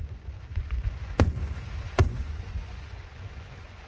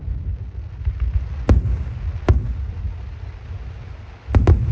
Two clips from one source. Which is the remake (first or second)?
first